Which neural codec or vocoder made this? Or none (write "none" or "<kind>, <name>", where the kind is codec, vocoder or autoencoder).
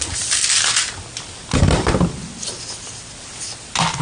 vocoder, BigVGAN v2